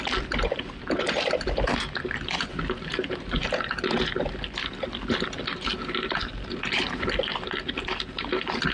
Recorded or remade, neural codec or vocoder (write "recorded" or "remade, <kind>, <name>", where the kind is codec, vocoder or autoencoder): recorded